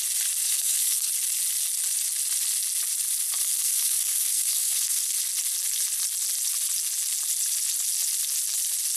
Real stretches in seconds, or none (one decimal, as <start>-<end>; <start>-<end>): 0.0-0.4; 1.1-3.4; 5.1-9.0